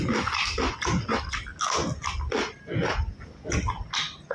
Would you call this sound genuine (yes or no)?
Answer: yes